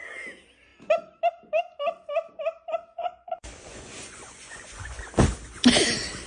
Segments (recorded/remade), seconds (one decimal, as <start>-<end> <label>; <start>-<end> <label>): 0.0-2.9 recorded; 2.9-5.0 remade; 5.0-6.3 recorded